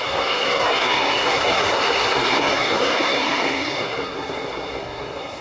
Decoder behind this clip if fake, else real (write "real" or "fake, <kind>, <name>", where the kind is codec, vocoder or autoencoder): fake, codec, SNAC